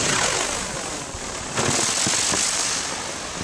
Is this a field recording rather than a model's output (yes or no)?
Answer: yes